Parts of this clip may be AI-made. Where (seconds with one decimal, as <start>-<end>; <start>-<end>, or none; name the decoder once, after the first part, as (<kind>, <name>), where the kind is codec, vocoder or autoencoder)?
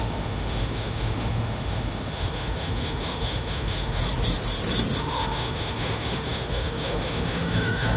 0.0-4.0 (autoencoder, DAC-VAE); 5.0-8.0